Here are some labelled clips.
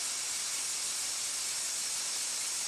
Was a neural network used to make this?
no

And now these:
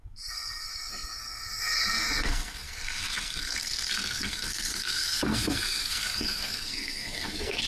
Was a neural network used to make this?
yes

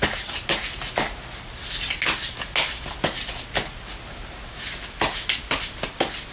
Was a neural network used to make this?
no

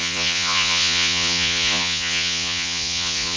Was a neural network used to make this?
yes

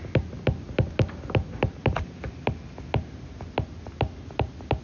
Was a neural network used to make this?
no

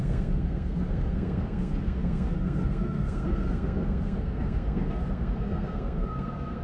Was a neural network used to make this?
yes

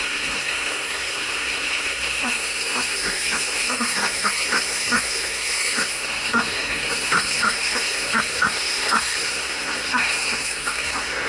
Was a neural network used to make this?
yes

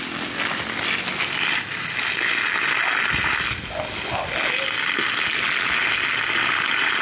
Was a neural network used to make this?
no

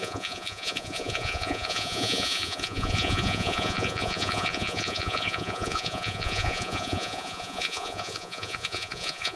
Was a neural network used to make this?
yes